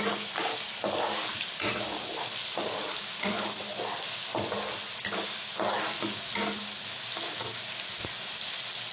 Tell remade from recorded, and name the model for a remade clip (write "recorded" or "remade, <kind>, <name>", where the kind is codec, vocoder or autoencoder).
recorded